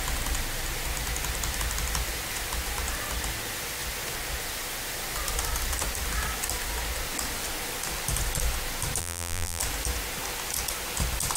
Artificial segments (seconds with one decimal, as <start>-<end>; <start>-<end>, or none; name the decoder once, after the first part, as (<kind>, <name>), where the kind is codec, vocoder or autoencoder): 9.0-9.6 (vocoder, BigVGAN v2)